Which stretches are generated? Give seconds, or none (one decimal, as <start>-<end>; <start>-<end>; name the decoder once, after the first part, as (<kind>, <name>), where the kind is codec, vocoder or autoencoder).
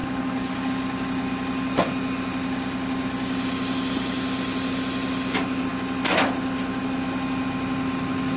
0.0-0.7 (codec, DAC)